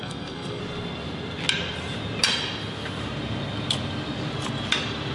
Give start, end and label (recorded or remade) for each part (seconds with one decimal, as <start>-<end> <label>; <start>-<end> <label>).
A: 0.0-0.6 remade; 0.6-5.1 recorded